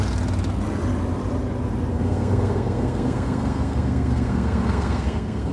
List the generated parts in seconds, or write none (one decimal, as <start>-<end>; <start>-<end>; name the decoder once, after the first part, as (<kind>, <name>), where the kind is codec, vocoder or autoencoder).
1.9-5.5 (codec, SNAC)